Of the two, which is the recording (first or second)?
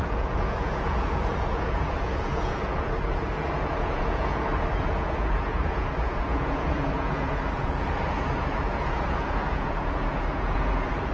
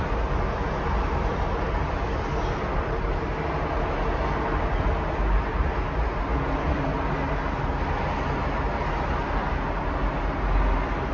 second